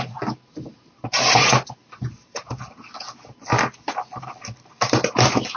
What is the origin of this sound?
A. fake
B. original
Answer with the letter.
B